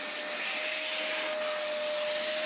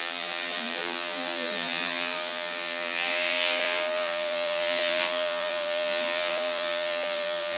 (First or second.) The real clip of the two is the first